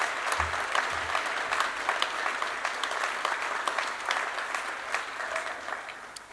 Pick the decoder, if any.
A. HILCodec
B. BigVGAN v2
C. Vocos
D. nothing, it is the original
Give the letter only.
D